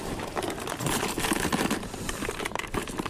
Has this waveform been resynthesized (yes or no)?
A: yes